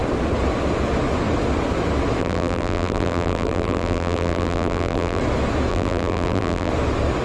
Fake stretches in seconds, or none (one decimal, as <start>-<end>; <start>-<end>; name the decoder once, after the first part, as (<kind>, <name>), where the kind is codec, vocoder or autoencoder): 2.2-5.2 (vocoder, BigVGAN v2); 5.7-6.7